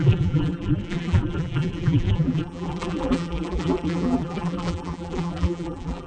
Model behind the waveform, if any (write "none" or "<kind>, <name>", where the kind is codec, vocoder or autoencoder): vocoder, BigVGAN v2